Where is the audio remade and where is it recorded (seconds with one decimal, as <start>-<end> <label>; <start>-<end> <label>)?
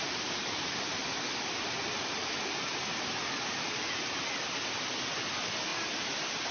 0.0-6.5 recorded